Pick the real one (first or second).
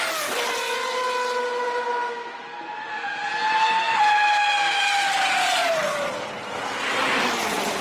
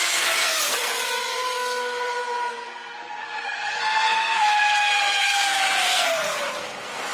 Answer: first